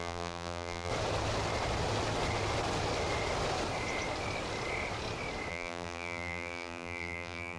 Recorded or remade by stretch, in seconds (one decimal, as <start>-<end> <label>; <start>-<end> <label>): 0.0-0.9 remade; 0.9-5.5 recorded; 5.5-7.6 remade